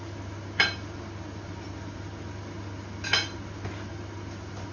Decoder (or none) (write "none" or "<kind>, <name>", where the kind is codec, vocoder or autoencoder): none